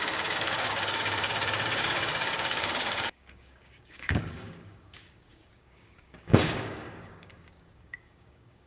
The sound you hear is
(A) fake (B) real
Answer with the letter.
A